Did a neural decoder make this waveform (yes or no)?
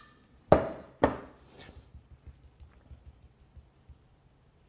no